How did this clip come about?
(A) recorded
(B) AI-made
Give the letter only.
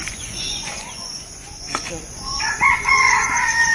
B